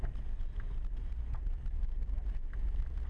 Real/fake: real